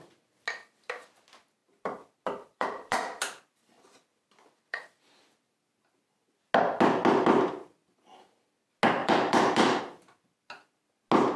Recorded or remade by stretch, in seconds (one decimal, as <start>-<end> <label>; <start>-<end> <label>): 0.0-1.6 recorded; 1.6-5.4 remade; 5.4-9.0 recorded; 9.0-9.8 remade; 9.8-11.4 recorded